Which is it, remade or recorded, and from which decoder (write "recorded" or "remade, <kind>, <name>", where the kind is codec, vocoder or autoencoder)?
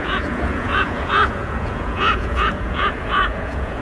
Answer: remade, vocoder, Vocos